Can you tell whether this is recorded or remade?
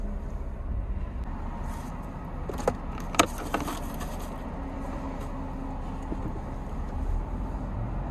recorded